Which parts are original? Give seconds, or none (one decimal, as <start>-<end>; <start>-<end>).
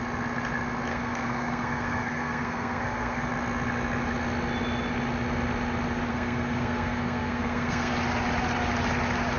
0.0-0.9; 3.3-6.1; 7.9-9.4